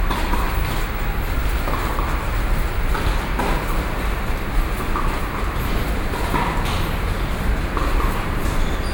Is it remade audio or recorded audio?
recorded